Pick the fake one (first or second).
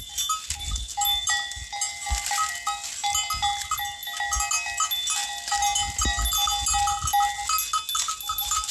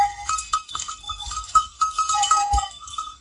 second